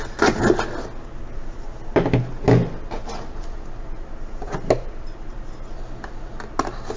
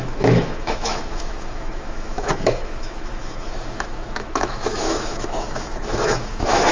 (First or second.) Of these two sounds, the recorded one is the first